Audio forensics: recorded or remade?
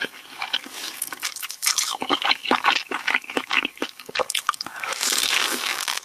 remade